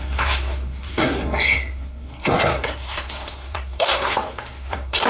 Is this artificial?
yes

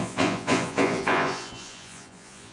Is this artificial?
yes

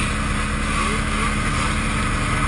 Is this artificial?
no